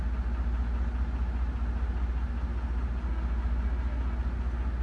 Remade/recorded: recorded